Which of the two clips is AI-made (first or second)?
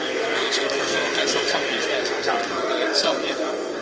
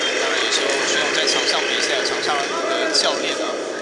first